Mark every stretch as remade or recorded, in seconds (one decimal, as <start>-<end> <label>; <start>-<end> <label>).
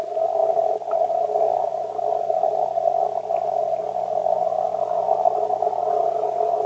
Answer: 0.0-6.7 recorded